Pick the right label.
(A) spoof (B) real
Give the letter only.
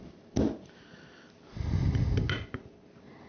B